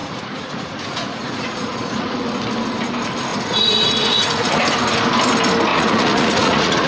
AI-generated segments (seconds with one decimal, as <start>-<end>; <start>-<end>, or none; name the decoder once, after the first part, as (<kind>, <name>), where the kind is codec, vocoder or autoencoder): 0.0-2.3 (vocoder, Vocos); 3.3-4.6; 5.7-6.9